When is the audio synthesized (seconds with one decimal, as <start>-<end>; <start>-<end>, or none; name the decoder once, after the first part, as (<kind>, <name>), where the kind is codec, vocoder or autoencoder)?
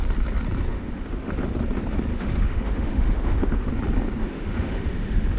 0.7-1.3 (autoencoder, DAC-VAE); 2.1-3.7; 4.2-5.4